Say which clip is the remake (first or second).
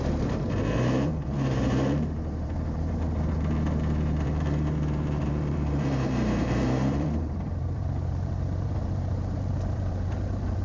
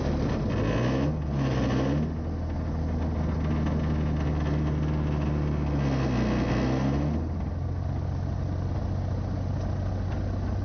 first